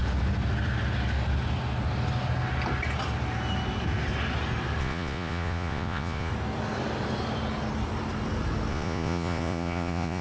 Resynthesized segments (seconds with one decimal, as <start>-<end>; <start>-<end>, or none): 4.8-6.3; 8.7-10.2